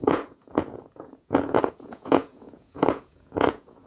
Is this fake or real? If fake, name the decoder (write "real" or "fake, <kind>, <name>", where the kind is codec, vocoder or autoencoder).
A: fake, vocoder, Vocos